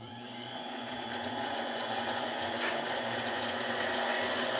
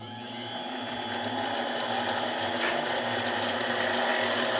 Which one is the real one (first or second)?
second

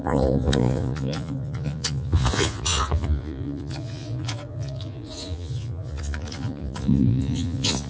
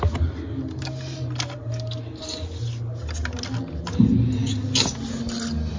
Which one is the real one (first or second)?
second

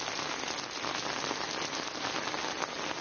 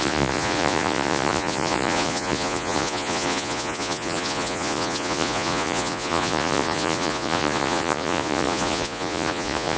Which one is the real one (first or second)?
first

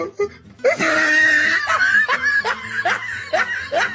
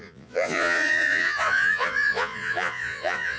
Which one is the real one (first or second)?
first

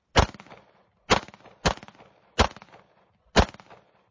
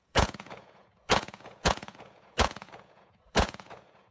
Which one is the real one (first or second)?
first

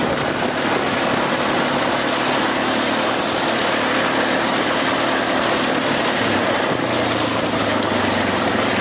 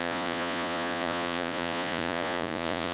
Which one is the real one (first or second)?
first